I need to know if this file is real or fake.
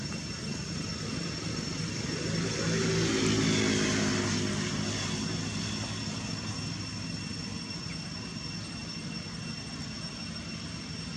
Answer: real